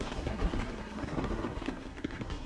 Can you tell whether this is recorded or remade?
remade